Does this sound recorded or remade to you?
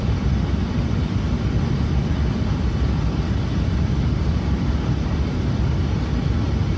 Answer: remade